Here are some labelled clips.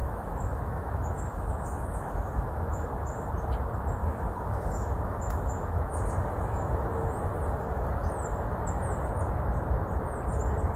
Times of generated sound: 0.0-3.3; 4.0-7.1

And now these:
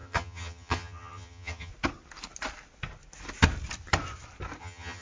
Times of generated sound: 0.0-1.7; 4.6-5.0

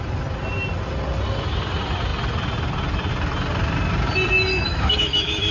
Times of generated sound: 4.5-5.5

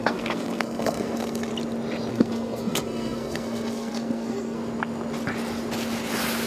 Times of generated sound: 0.0-1.5; 2.1-4.6